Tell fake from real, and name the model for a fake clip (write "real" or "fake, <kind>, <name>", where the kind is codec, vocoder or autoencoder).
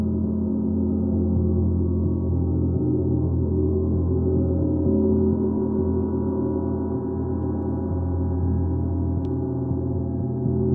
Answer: real